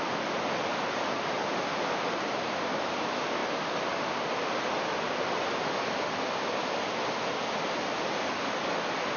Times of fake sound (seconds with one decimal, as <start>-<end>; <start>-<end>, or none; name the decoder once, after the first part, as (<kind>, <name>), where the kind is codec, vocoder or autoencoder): none